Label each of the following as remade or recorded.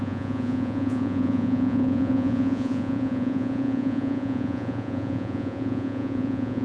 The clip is remade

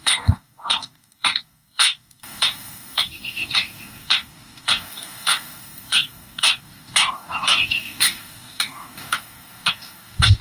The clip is remade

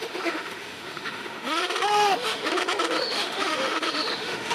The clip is remade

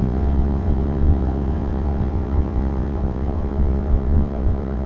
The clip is remade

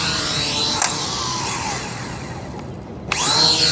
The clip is recorded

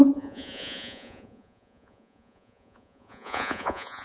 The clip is remade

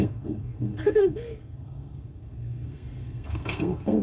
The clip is remade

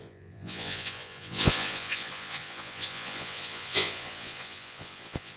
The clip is remade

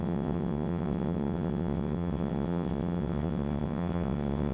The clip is remade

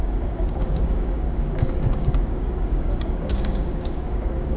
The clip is remade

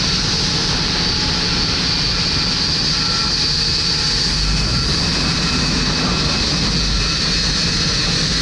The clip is recorded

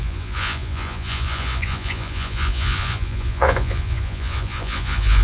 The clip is remade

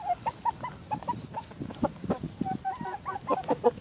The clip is recorded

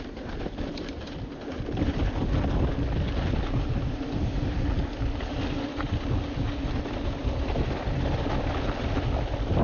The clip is recorded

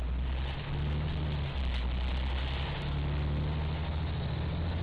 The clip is recorded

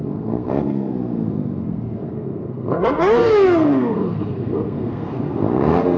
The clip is remade